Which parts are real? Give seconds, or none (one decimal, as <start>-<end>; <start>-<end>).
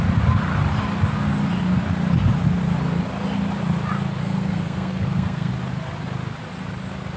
0.0-4.2; 5.5-7.2